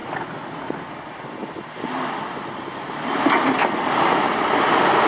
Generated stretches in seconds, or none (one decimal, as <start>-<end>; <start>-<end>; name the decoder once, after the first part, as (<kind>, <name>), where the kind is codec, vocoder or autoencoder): 0.0-0.8 (vocoder, Vocos)